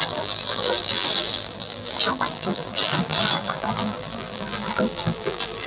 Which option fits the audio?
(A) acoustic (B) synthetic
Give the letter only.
B